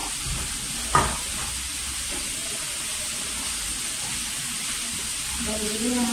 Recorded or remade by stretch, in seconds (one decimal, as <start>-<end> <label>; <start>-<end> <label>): 0.0-6.1 recorded